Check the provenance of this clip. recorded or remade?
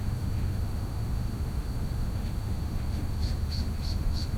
remade